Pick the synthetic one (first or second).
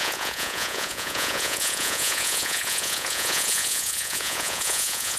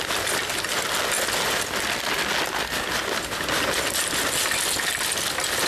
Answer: first